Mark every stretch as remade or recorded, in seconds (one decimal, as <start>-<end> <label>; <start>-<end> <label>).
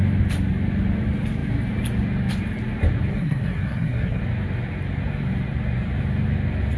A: 0.0-3.1 recorded; 3.1-4.2 remade; 4.2-6.8 recorded